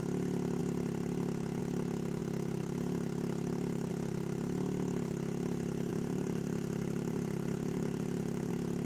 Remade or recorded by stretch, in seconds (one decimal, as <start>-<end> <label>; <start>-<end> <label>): 0.0-5.9 recorded; 5.9-8.5 remade; 8.5-8.9 recorded